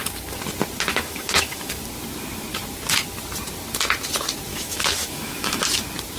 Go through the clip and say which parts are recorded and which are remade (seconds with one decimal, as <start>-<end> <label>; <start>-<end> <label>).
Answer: 0.0-0.9 recorded; 0.9-1.8 remade; 1.8-4.5 recorded; 4.5-5.6 remade; 5.6-6.2 recorded